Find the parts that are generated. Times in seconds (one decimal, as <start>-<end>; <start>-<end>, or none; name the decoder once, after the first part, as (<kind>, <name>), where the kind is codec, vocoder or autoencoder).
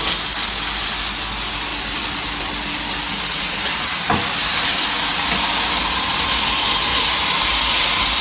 none